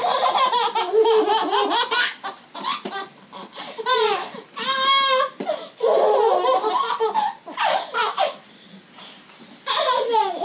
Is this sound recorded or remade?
recorded